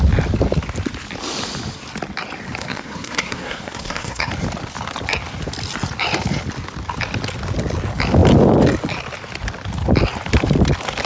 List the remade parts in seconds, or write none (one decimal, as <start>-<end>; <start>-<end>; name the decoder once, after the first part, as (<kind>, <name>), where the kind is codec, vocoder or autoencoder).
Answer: 2.6-4.3 (codec, SNAC)